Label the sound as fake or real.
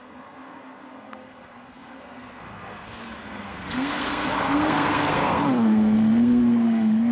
fake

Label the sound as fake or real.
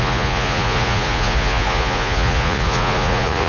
fake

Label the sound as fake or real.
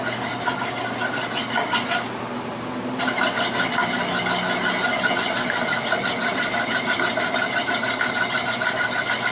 real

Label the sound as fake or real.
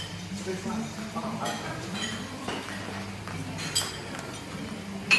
real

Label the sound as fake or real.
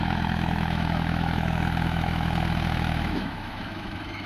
fake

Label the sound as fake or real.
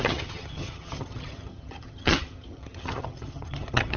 fake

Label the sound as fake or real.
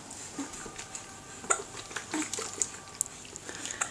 real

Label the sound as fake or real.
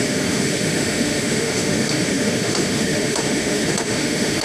fake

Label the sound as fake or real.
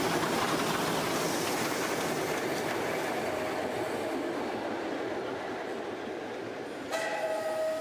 real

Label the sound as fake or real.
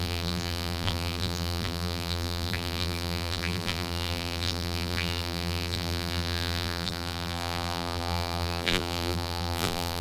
fake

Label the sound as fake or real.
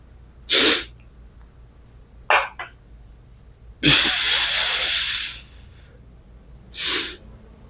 real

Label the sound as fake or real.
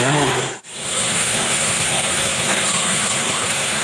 fake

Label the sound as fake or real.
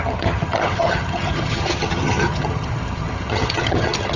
fake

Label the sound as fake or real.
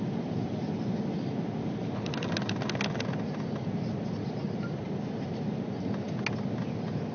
real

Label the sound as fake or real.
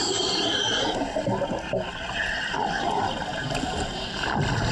real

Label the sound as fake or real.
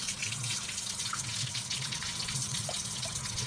fake